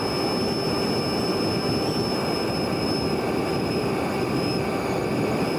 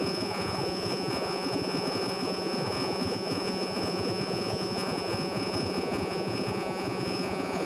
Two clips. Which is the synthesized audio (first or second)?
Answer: second